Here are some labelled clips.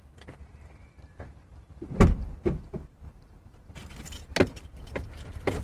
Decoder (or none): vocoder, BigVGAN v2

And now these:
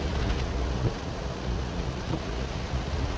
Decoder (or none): vocoder, Vocos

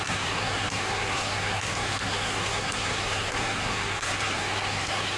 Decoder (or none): codec, SNAC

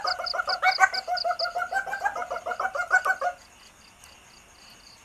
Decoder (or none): none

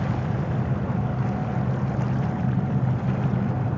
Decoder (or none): none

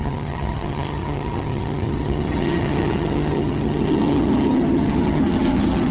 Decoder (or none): vocoder, HiFi-GAN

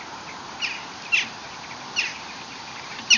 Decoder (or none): none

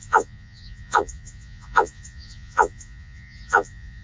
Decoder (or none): vocoder, Vocos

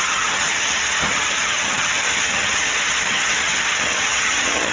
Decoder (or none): vocoder, HiFi-GAN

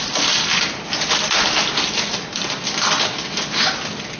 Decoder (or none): none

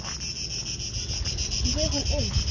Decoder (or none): none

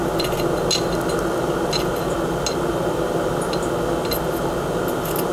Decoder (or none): none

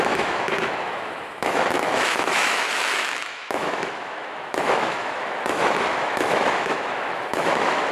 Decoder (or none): autoencoder, DAC-VAE